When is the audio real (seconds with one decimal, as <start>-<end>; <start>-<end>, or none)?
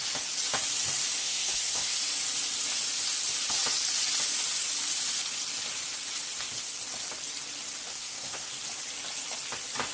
0.0-1.2; 2.0-7.9; 8.5-9.9